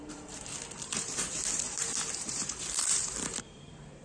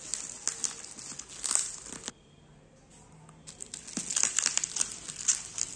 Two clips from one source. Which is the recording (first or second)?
second